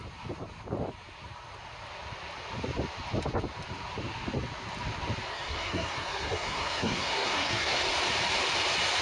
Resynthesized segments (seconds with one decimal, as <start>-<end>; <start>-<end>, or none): 5.3-7.8